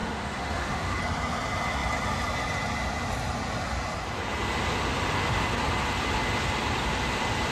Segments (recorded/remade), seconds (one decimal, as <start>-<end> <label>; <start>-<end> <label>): 0.0-1.0 remade; 1.0-7.5 recorded